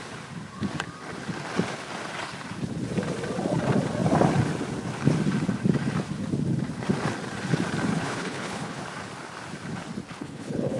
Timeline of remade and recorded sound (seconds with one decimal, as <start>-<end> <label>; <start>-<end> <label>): 0.0-7.9 recorded; 7.9-8.8 remade; 8.8-10.1 recorded; 10.1-10.8 remade